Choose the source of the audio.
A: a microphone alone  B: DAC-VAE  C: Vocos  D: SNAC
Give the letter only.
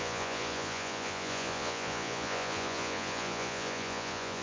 C